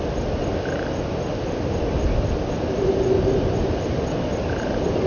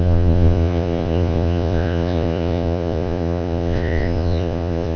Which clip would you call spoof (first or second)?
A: second